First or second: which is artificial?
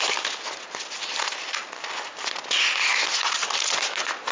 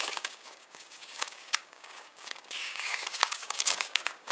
second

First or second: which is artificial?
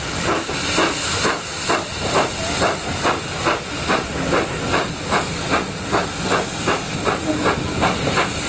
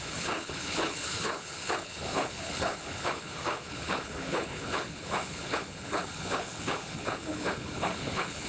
second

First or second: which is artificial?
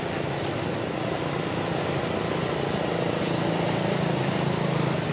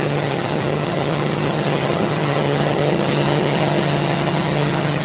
second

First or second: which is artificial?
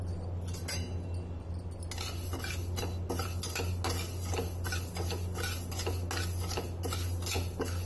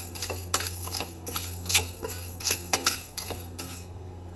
second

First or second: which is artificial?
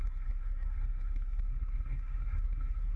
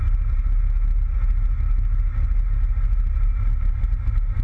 first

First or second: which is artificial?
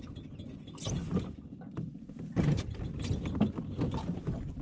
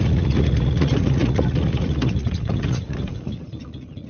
second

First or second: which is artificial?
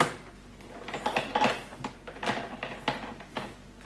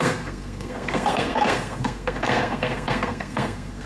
second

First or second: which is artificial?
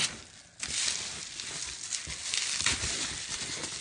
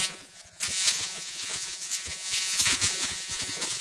second